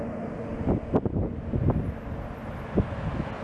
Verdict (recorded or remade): recorded